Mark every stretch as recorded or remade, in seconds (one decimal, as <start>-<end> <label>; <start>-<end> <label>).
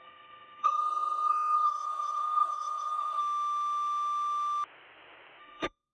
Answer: 0.0-3.2 remade; 3.2-5.4 recorded; 5.4-5.9 remade